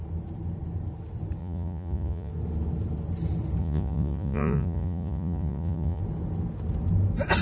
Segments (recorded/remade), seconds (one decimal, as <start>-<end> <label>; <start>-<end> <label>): 0.0-1.4 recorded; 1.4-2.3 remade; 2.3-3.6 recorded; 3.6-6.0 remade; 6.0-7.4 recorded